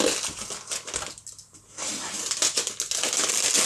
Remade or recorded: recorded